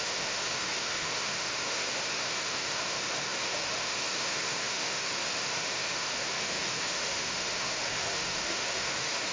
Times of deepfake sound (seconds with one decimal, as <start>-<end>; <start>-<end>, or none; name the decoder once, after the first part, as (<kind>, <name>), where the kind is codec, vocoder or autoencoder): 0.0-9.3 (autoencoder, DAC-VAE)